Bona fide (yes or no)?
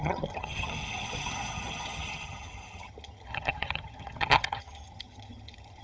no